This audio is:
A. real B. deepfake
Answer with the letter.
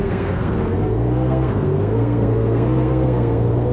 B